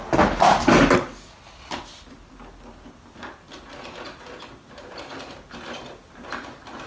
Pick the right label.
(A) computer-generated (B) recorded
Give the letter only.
B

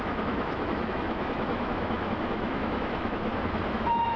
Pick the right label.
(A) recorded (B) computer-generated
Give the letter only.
B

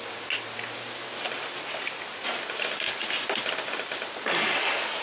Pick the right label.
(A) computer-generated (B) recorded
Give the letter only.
B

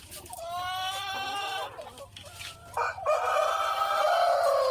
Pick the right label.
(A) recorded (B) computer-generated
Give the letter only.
A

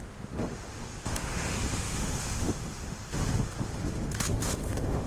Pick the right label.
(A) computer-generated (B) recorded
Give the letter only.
A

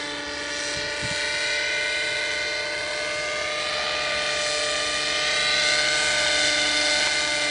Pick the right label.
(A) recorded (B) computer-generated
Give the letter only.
A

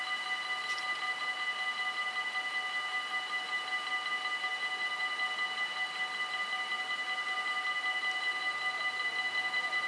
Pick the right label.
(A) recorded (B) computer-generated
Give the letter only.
A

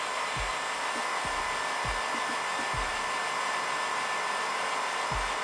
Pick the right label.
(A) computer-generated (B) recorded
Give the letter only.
B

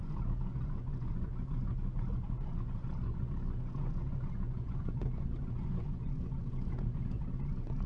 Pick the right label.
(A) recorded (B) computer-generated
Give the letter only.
B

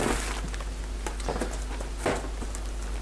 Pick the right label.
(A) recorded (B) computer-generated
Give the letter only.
A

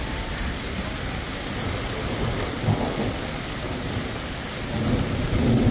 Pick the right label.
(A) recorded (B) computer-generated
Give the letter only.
A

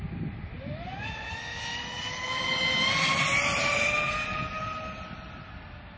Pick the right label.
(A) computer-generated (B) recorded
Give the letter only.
B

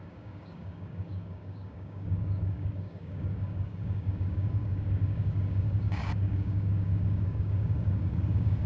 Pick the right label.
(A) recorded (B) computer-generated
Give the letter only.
B